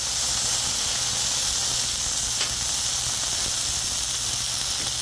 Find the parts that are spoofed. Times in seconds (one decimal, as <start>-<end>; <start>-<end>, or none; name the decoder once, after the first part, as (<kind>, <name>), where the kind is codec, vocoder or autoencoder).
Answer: none